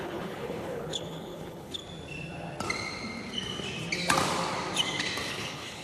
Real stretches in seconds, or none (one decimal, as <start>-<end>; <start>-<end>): 1.8-5.3